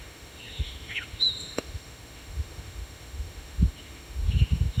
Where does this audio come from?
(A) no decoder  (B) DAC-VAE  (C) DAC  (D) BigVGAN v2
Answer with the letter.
B